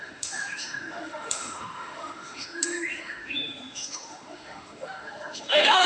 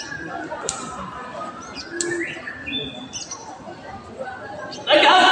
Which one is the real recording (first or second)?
second